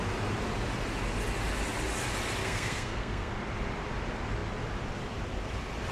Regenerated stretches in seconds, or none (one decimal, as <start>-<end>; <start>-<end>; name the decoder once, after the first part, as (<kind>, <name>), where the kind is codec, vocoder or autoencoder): 2.4-3.3 (codec, SNAC)